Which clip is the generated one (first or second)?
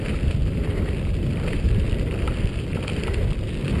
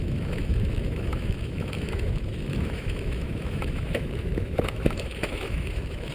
second